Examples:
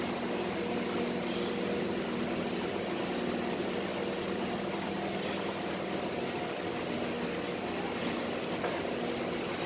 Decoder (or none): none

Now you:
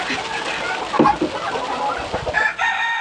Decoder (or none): none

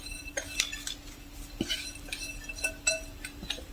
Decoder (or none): none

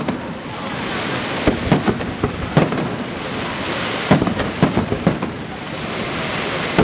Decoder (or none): none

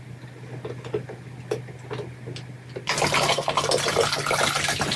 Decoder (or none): none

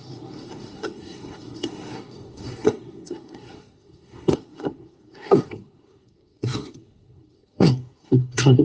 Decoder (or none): codec, SNAC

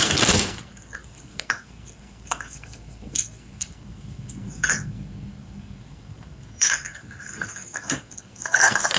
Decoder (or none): codec, SNAC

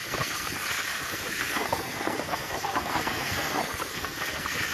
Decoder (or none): codec, SNAC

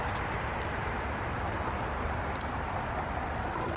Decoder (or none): none